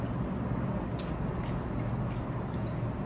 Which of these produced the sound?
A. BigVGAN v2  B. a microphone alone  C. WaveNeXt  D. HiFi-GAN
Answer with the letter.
B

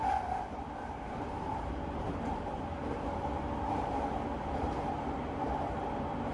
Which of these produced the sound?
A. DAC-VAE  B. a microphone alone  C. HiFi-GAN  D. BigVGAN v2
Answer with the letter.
D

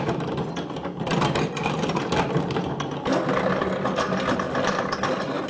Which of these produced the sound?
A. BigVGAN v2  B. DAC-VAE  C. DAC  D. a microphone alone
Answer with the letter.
D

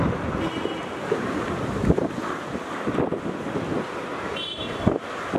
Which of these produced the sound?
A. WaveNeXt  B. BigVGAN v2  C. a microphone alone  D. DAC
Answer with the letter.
B